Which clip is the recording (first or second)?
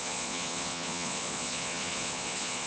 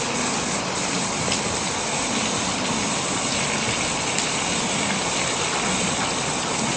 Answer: second